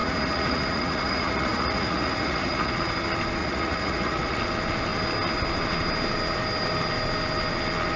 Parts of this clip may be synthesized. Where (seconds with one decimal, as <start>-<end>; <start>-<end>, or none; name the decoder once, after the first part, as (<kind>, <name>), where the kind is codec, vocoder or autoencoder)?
0.0-2.7 (vocoder, Vocos); 3.4-4.4